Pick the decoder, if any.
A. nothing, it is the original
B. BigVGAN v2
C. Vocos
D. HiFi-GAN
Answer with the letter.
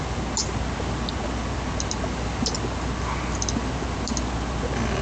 A